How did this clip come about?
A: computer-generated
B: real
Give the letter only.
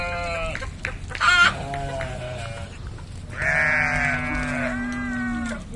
B